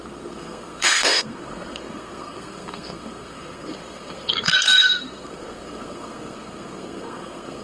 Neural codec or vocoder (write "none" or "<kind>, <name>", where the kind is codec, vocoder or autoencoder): codec, SNAC